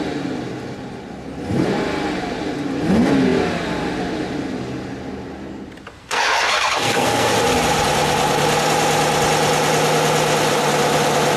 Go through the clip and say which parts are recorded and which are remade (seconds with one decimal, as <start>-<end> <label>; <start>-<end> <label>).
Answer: 0.0-6.0 recorded; 6.0-7.3 remade; 7.3-11.4 recorded